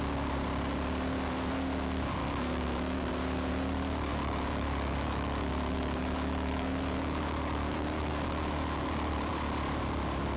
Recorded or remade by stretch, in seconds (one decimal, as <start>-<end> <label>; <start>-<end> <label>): 0.0-2.2 recorded; 2.2-3.1 remade; 3.1-4.1 recorded; 4.1-9.3 remade; 9.3-10.4 recorded